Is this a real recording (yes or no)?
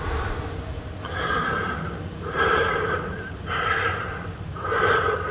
yes